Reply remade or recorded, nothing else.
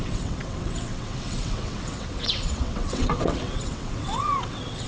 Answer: remade